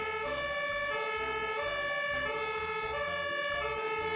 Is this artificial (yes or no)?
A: no